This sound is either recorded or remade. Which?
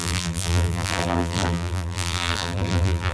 remade